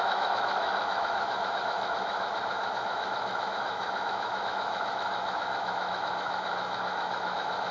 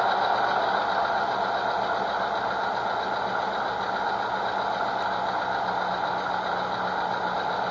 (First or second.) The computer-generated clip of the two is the first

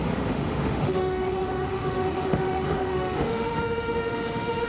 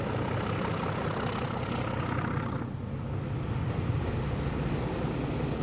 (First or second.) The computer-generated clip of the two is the first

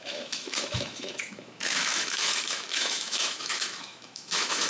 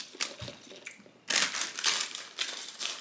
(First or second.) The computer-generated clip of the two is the first